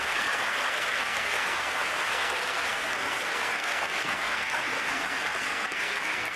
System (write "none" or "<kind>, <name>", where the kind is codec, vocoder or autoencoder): codec, SNAC